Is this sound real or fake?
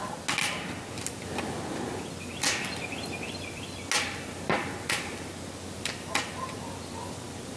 real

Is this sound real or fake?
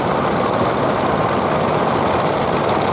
real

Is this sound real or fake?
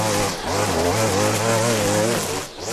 real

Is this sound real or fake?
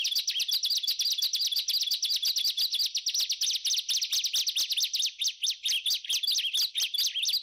real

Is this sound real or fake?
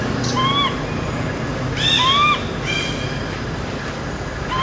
real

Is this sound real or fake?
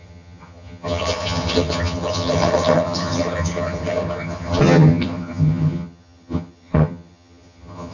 fake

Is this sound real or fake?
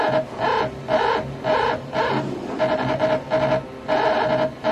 real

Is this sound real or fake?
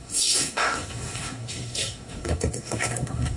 fake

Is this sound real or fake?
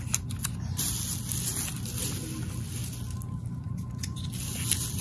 real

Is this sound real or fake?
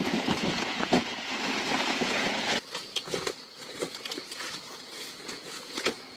fake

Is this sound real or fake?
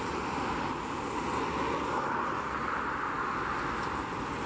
real